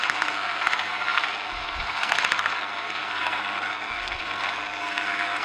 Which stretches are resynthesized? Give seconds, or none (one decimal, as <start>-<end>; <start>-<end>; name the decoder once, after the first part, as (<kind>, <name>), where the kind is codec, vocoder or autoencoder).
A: 0.0-5.4 (codec, SNAC)